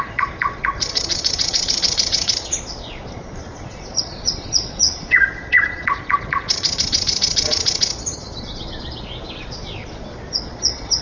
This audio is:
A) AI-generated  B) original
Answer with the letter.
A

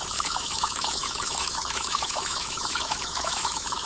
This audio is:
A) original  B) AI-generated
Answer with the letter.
B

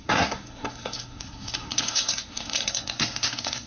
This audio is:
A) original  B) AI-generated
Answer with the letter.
B